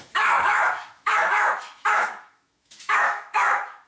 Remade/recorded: remade